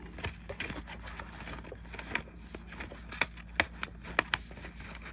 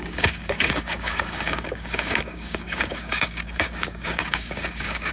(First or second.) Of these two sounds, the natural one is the first